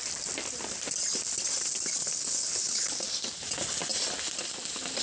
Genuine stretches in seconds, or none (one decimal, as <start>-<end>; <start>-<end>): 0.0-2.0; 2.9-5.0